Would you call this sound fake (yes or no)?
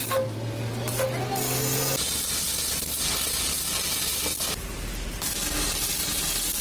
no